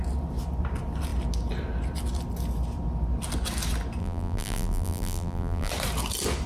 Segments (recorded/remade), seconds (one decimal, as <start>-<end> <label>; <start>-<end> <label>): 0.0-4.0 recorded; 4.0-5.7 remade; 5.7-6.5 recorded